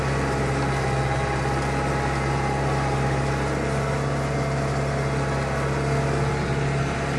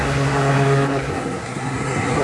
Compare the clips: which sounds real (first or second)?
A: first